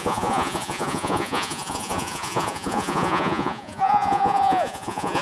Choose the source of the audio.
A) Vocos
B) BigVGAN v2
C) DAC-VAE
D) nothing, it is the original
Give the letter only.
A